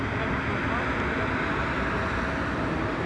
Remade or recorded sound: recorded